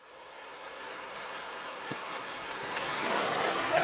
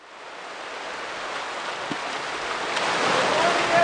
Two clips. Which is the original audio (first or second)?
second